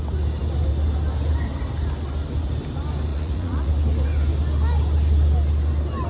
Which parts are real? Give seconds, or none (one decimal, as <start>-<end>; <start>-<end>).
0.0-3.1; 3.7-6.1